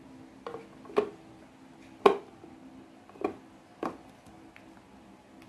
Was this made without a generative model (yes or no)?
yes